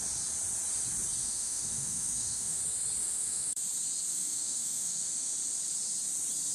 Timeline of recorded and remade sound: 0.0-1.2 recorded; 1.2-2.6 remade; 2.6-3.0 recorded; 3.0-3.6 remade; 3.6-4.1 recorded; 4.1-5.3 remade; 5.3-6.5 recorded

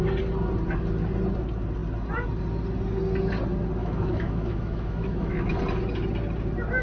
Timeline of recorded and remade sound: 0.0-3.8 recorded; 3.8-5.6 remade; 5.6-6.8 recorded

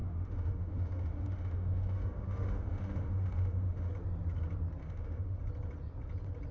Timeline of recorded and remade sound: 0.0-3.9 remade; 3.9-4.8 recorded; 4.8-5.4 remade; 5.4-6.5 recorded